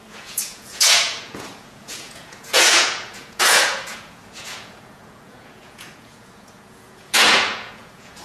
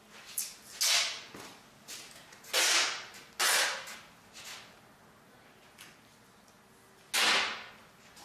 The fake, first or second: first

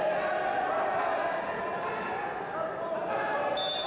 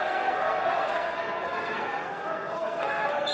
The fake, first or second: second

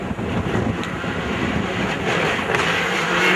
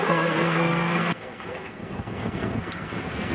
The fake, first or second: second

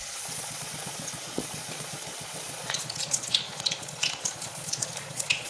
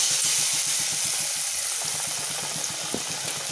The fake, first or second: first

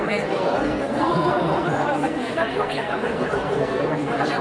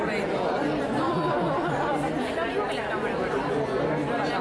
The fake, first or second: first